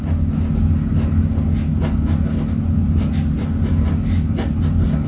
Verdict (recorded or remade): recorded